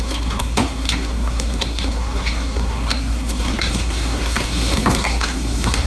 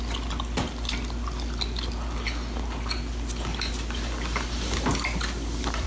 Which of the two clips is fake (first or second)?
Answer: first